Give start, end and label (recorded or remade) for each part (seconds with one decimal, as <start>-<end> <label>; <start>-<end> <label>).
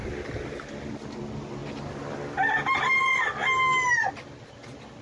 0.0-5.0 recorded